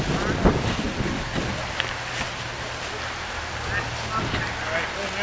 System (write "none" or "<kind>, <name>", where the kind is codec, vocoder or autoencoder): none